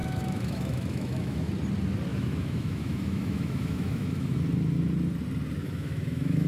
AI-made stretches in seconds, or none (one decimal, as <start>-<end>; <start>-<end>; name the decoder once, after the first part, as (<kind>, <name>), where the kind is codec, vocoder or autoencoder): 0.0-1.5 (autoencoder, DAC-VAE); 2.1-4.4; 5.6-6.5